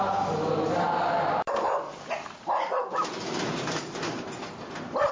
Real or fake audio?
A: real